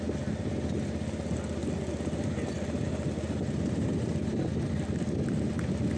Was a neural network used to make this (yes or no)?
no